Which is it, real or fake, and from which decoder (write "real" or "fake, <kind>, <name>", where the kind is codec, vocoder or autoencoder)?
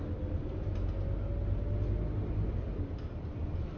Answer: real